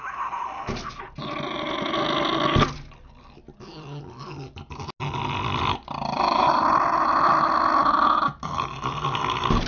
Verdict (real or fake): real